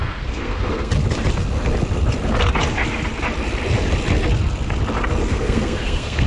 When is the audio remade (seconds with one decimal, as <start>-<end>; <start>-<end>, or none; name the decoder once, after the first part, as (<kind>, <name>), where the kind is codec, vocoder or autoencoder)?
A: 0.0-0.9 (codec, SNAC); 5.3-6.3